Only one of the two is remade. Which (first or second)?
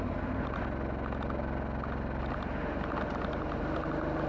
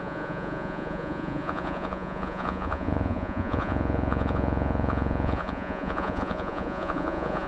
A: second